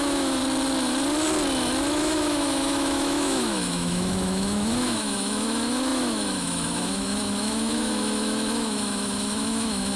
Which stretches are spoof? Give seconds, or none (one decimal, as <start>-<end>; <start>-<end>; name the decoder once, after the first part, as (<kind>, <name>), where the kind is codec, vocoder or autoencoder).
0.0-0.4 (autoencoder, DAC-VAE); 2.0-10.0